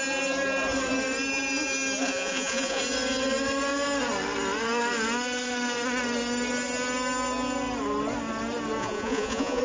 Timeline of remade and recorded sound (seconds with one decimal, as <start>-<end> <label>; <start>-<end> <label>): 0.0-2.0 recorded; 2.0-2.8 remade; 2.8-8.8 recorded; 8.8-9.6 remade